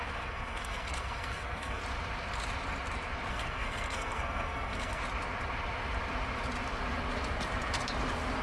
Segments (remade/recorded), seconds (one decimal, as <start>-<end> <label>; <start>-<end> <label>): 0.0-1.8 remade; 1.8-3.3 recorded; 3.3-5.0 remade; 5.0-8.4 recorded